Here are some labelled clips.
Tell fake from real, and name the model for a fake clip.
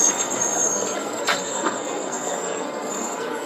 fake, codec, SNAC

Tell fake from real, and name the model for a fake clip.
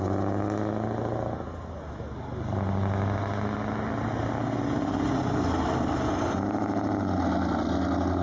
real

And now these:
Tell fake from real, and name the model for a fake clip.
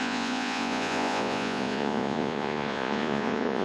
fake, vocoder, Vocos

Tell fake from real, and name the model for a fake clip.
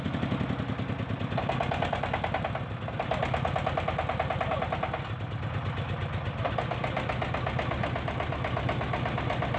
real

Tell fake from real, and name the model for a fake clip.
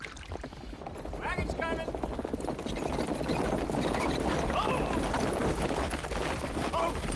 real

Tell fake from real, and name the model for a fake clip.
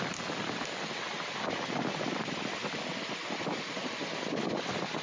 real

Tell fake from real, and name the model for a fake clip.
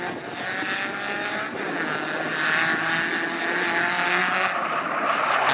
real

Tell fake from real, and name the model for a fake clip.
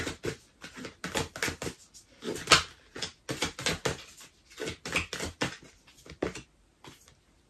real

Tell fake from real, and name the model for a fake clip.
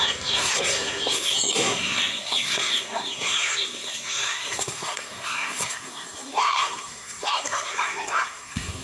fake, codec, SNAC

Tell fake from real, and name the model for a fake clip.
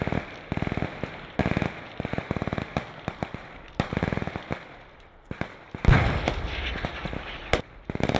real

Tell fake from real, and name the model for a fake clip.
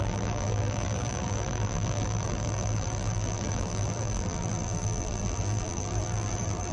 fake, vocoder, BigVGAN v2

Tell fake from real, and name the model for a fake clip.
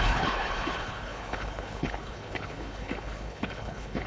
fake, codec, HILCodec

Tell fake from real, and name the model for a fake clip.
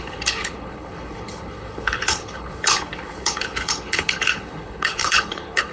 fake, codec, HILCodec